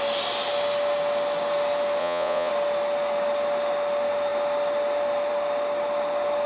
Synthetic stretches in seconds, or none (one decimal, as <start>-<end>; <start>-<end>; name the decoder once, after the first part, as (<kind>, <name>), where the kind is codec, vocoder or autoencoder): 2.0-2.5 (vocoder, Vocos)